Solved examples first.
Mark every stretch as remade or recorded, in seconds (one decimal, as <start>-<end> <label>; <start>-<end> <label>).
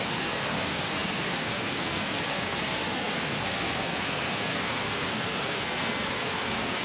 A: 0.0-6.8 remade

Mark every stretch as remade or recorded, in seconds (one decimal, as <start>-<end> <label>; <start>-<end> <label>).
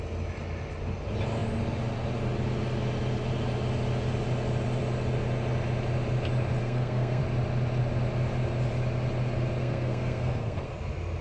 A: 0.0-6.6 recorded; 6.6-7.2 remade; 7.2-9.6 recorded; 9.6-10.7 remade; 10.7-11.2 recorded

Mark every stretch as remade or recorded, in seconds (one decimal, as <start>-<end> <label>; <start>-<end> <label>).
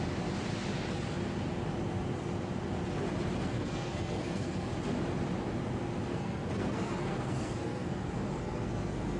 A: 0.0-3.4 recorded; 3.4-4.7 remade; 4.7-6.1 recorded; 6.1-9.2 remade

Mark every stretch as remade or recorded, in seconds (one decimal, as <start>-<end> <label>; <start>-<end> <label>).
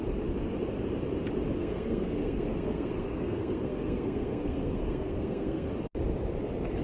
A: 0.0-1.6 recorded; 1.6-5.7 remade; 5.7-6.8 recorded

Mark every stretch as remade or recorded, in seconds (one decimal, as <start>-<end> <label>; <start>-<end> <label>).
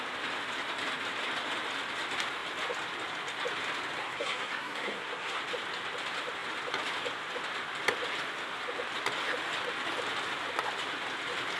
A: 0.0-4.0 recorded; 4.0-5.4 remade; 5.4-11.6 recorded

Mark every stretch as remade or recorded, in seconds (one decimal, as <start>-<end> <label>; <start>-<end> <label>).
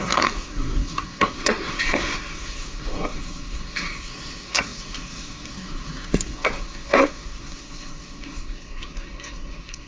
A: 0.0-9.9 remade